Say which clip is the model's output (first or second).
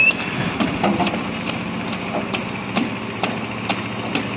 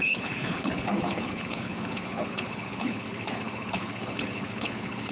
second